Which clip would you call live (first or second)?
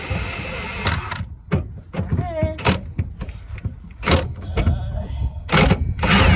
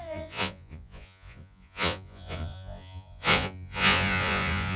first